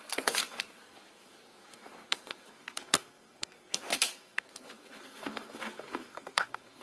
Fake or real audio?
fake